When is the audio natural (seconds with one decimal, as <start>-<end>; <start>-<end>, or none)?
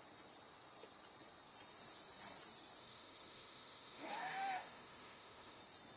0.0-2.8; 5.6-6.0